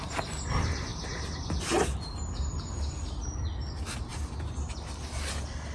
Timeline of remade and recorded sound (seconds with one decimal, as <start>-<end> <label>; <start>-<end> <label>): 0.0-0.9 recorded; 0.9-1.6 remade; 1.6-4.1 recorded; 4.1-4.7 remade; 4.7-5.7 recorded